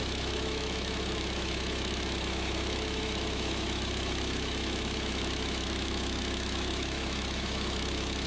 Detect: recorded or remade remade